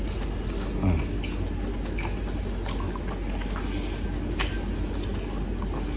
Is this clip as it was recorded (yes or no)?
yes